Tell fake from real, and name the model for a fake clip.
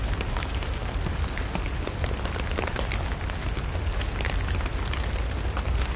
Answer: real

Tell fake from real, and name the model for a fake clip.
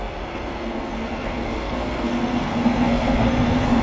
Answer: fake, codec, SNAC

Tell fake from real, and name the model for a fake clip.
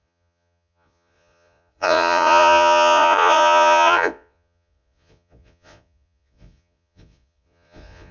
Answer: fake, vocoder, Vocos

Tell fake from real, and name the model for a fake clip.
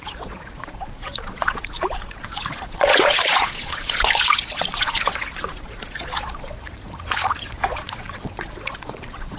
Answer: fake, vocoder, Vocos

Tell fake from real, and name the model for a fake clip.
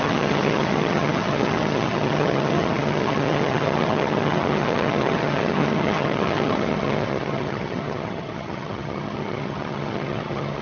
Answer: fake, vocoder, HiFi-GAN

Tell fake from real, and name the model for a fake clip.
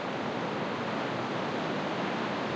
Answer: real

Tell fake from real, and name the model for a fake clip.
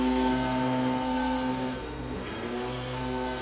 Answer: fake, codec, SNAC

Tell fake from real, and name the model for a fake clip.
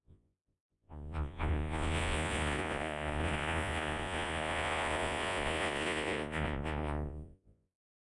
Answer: fake, vocoder, Vocos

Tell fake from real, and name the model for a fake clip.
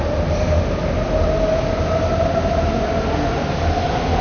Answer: real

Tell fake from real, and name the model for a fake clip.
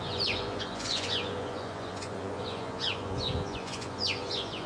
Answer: fake, vocoder, Vocos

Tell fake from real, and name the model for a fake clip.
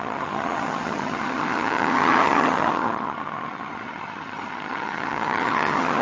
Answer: fake, vocoder, HiFi-GAN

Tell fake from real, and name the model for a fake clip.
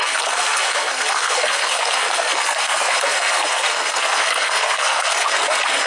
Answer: fake, codec, SNAC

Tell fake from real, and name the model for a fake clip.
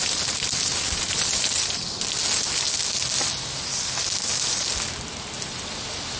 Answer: real